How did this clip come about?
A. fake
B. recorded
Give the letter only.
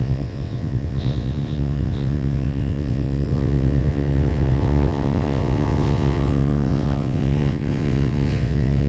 A